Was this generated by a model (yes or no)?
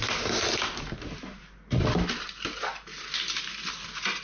no